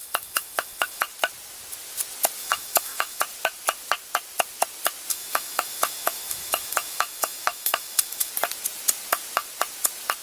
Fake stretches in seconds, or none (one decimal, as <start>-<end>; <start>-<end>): 0.0-1.0; 2.4-3.2; 5.1-8.3